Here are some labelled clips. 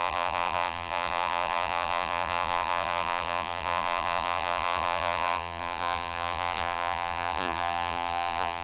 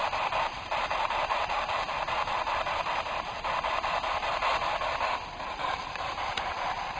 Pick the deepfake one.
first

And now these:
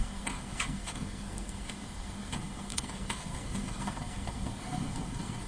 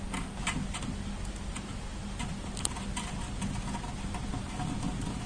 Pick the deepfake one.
first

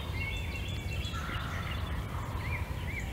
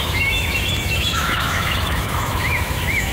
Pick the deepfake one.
second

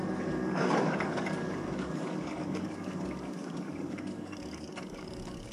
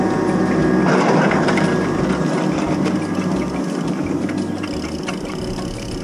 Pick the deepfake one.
first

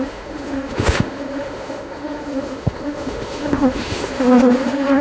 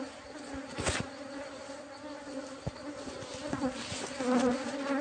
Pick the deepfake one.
first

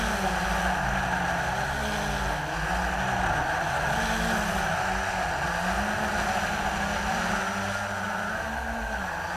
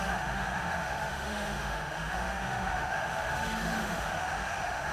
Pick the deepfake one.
second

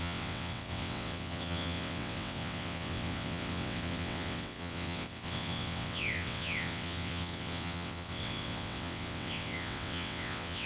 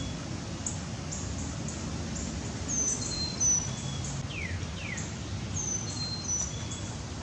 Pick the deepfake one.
first